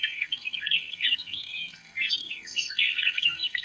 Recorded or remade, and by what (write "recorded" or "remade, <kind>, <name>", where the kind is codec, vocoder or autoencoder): remade, codec, SNAC